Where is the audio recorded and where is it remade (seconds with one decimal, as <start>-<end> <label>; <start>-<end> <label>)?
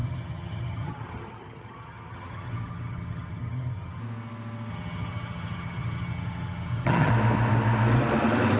0.0-4.0 remade; 4.0-4.7 recorded; 4.7-7.1 remade; 7.1-8.6 recorded